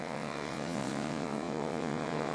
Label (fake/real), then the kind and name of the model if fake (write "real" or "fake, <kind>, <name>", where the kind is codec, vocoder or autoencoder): fake, vocoder, WaveNeXt